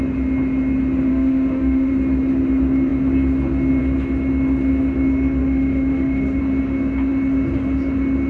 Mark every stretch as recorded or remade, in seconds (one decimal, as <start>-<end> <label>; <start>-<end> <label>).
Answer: 0.0-1.1 recorded; 1.1-1.9 remade; 1.9-5.4 recorded; 5.4-6.4 remade; 6.4-8.3 recorded